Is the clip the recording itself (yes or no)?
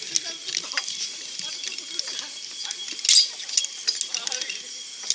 yes